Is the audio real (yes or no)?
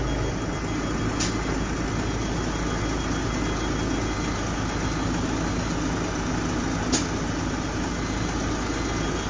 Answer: yes